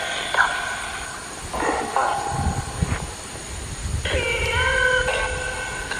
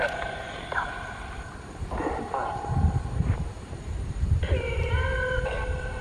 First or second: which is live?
first